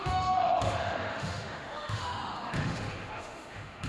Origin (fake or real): fake